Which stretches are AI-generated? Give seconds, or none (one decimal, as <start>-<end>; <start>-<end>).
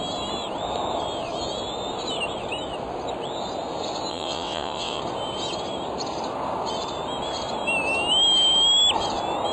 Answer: 4.1-5.0